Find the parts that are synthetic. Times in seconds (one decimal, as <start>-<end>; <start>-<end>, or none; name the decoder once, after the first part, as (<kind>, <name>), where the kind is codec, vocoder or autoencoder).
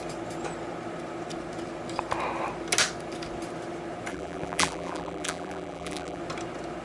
4.1-6.2 (vocoder, BigVGAN v2)